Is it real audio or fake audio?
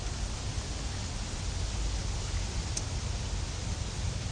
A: real